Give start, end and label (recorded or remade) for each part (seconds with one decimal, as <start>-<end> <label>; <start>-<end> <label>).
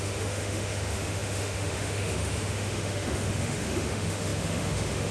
0.0-5.1 remade